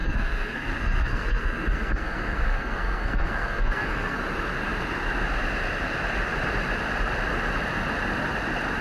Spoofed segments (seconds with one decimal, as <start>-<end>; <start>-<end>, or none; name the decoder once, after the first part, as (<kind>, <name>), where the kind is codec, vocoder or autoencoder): 0.0-4.2 (codec, SNAC)